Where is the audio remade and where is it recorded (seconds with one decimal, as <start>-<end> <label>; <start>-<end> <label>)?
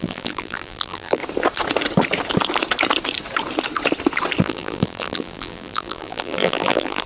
0.0-1.2 remade; 1.2-4.4 recorded; 4.4-7.1 remade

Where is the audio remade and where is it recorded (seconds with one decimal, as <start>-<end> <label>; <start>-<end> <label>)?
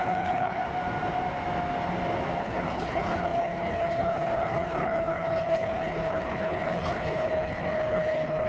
0.0-0.6 remade; 0.6-2.4 recorded; 2.4-8.5 remade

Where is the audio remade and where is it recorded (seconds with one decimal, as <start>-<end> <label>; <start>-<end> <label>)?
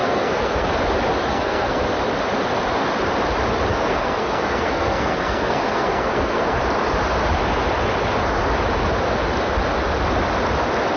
0.0-0.7 remade; 0.7-1.3 recorded; 1.3-1.8 remade; 1.8-3.7 recorded; 3.7-6.6 remade; 6.6-11.0 recorded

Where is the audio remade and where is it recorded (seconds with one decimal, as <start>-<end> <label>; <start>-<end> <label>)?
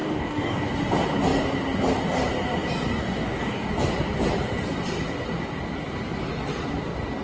0.0-0.7 remade; 0.7-3.0 recorded; 3.0-3.7 remade; 3.7-7.2 recorded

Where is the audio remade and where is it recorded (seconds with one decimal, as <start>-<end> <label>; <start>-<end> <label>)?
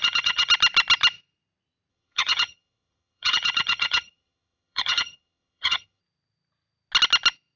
0.0-0.5 remade; 0.5-1.9 recorded; 1.9-6.0 remade; 6.0-7.6 recorded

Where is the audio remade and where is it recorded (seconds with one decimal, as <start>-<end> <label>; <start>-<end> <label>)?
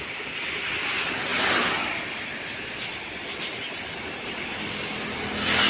0.0-5.7 recorded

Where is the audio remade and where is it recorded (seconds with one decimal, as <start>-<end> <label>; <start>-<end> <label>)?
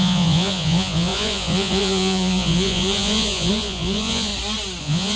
0.0-4.3 remade; 4.3-4.8 recorded; 4.8-5.2 remade